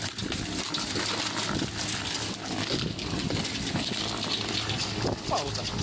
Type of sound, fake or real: real